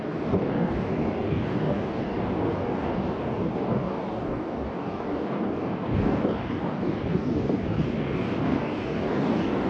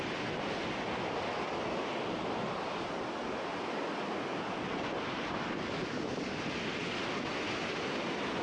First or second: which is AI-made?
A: first